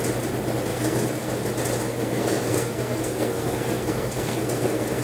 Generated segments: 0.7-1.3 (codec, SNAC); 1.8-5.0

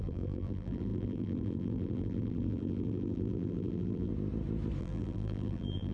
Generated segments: 0.0-4.1 (vocoder, BigVGAN v2); 4.8-5.9